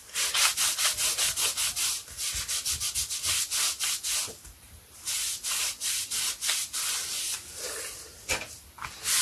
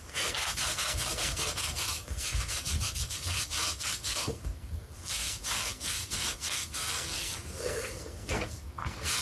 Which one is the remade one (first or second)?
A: second